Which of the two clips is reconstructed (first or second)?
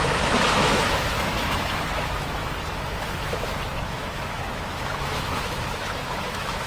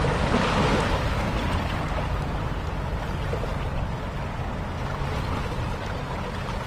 first